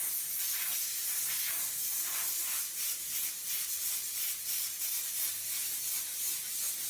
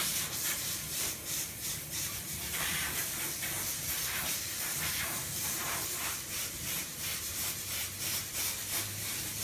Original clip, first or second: first